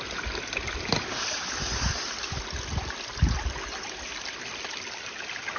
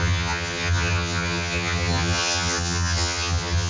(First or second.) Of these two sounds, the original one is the first